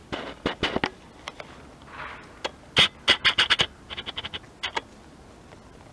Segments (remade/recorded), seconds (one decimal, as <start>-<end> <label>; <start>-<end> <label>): 0.0-5.9 recorded